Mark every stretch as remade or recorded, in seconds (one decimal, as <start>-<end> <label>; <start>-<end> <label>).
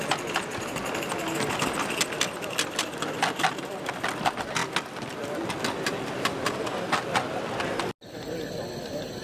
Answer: 0.0-9.2 recorded